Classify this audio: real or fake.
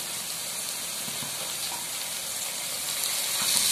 real